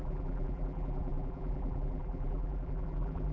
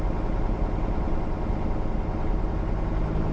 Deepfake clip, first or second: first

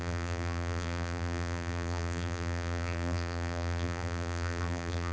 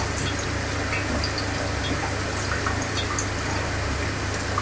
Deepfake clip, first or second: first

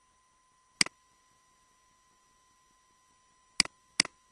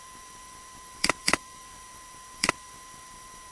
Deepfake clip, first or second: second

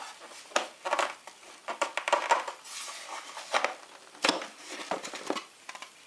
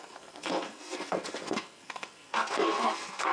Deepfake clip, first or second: second